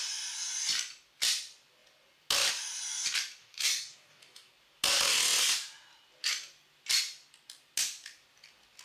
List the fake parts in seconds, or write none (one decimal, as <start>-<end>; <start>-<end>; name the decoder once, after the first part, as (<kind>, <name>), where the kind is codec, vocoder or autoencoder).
3.4-4.5 (codec, DAC)